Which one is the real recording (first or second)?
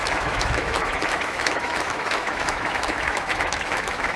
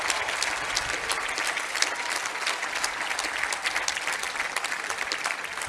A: second